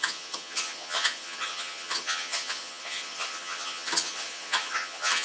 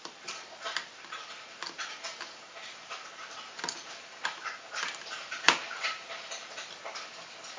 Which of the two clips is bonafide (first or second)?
second